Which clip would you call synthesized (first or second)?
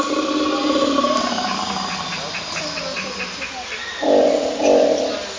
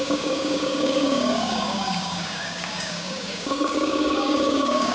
second